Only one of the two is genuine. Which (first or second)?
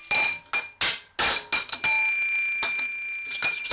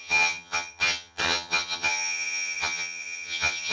first